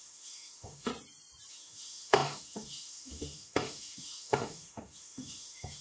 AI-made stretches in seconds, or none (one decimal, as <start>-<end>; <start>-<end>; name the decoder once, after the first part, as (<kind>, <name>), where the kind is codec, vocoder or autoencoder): 0.0-0.9 (autoencoder, DAC-VAE); 1.5-5.8